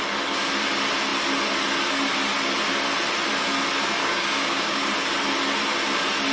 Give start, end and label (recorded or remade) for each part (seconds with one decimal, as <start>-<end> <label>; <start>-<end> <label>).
0.0-4.0 recorded; 4.0-4.9 remade; 4.9-6.3 recorded